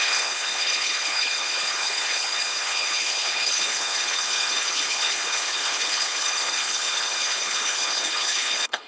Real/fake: fake